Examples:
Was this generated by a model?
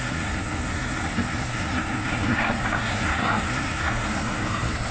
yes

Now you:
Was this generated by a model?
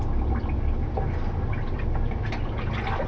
no